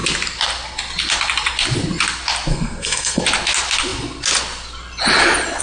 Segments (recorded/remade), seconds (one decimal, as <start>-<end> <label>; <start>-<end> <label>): 0.0-2.5 recorded; 2.5-3.2 remade; 3.2-5.6 recorded